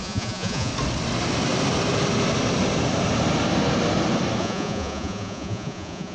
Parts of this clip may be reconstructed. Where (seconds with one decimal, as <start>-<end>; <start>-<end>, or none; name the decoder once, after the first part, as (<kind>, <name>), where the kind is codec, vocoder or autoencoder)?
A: 0.0-0.7 (vocoder, Vocos); 4.4-6.1